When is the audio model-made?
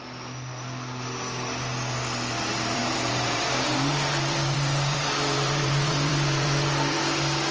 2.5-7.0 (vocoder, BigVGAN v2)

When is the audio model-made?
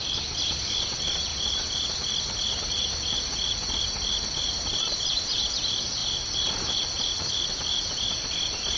0.0-8.8 (vocoder, BigVGAN v2)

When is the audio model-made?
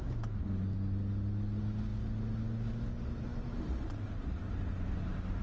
3.3-4.1 (vocoder, BigVGAN v2)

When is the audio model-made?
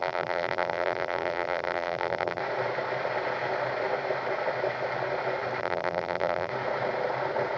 0.0-2.4 (vocoder, BigVGAN v2); 5.6-6.5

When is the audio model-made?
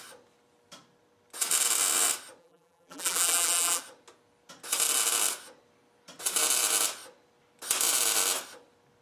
2.4-3.8 (vocoder, BigVGAN v2)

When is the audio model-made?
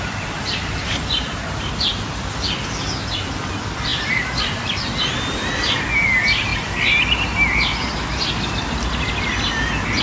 3.9-5.8 (vocoder, BigVGAN v2)